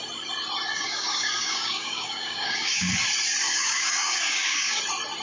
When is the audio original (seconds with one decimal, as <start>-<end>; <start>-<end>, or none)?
0.0-0.7; 3.0-3.4; 4.8-5.2